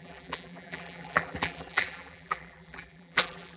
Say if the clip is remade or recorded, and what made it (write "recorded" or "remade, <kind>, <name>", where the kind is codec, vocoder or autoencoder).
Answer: remade, vocoder, BigVGAN v2